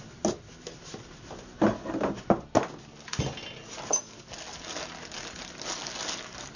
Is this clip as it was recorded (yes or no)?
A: yes